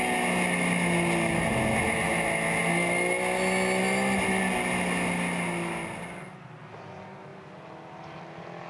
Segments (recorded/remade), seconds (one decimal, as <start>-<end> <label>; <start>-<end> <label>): 0.0-8.7 recorded